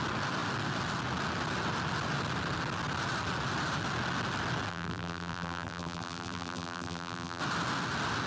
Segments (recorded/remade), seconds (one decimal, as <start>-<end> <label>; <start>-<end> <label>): 0.0-4.7 recorded; 4.7-7.4 remade; 7.4-8.3 recorded